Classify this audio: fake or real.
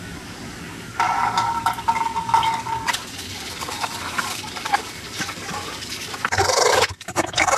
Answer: fake